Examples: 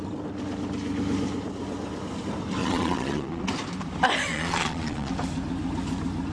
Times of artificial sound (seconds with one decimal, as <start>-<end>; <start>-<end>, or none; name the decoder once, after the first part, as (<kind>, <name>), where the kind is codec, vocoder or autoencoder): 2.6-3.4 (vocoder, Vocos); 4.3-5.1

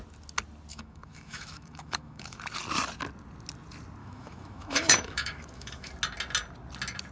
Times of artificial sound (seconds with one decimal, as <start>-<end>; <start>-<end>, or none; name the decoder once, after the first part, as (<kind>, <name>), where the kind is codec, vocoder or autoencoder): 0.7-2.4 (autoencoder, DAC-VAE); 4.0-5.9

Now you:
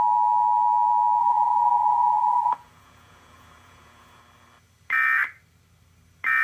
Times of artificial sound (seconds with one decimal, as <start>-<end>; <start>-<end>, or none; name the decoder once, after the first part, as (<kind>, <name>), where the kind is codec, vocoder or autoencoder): 1.2-4.2 (vocoder, Vocos)

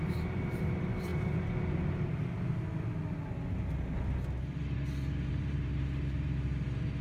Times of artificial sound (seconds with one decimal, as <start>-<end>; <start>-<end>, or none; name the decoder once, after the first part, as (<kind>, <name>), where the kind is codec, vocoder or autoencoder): 0.0-1.1 (vocoder, BigVGAN v2); 5.3-7.0

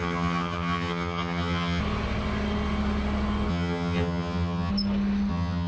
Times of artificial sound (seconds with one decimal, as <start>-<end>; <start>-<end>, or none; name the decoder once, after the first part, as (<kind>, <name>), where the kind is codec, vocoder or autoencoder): 0.0-1.8 (vocoder, HiFi-GAN); 3.5-4.7; 5.3-5.7